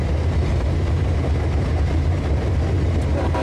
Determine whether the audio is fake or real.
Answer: fake